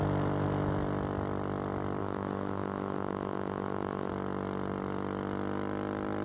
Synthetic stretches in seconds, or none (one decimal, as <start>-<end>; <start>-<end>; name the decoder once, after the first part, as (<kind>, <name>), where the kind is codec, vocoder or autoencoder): 2.0-4.1 (autoencoder, DAC-VAE)